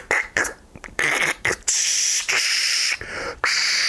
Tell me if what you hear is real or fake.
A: fake